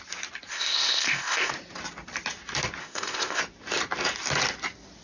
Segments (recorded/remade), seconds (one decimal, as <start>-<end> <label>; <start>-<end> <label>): 0.0-0.5 recorded; 0.5-1.5 remade; 1.5-2.8 recorded; 2.8-3.4 remade; 3.4-5.0 recorded